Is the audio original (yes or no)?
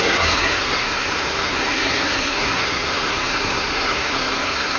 no